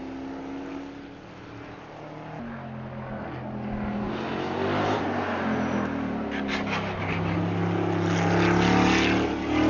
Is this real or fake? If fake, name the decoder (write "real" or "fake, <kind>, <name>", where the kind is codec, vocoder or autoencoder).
real